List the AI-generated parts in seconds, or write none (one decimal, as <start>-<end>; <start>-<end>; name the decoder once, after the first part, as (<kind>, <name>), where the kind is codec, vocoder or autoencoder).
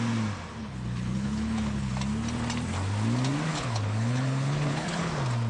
0.6-1.9 (codec, HILCodec); 3.5-5.1